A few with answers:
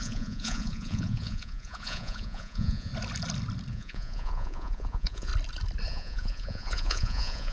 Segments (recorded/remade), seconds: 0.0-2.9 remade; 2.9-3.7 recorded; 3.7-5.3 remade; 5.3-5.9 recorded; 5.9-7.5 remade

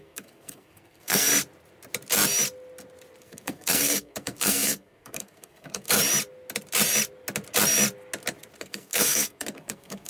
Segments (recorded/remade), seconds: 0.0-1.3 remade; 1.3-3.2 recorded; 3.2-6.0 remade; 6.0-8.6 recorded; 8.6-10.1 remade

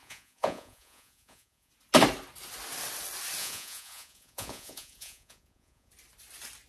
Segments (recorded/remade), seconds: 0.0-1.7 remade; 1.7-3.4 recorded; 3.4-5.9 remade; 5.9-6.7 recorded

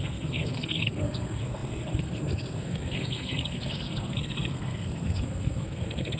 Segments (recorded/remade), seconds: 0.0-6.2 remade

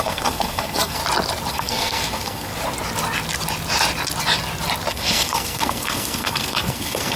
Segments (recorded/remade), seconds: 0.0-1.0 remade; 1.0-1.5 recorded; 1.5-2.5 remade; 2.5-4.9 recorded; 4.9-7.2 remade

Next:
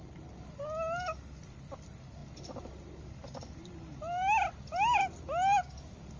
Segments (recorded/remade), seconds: 0.0-6.2 recorded

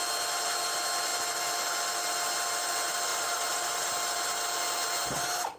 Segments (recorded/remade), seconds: 0.0-3.1 recorded; 3.1-3.9 remade; 3.9-5.6 recorded